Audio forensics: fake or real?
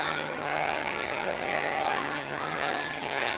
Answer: fake